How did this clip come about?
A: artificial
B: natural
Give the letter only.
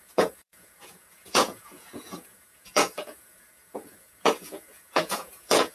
A